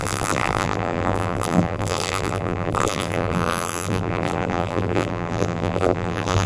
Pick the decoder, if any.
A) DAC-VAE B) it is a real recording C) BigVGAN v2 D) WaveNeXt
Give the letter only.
C